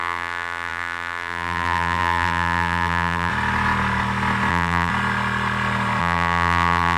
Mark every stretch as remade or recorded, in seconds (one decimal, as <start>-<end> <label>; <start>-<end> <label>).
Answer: 0.0-3.3 remade; 3.3-4.5 recorded; 4.5-4.9 remade; 4.9-6.0 recorded; 6.0-7.0 remade